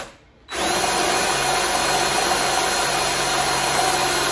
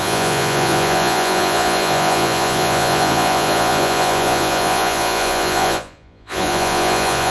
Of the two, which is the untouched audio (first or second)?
first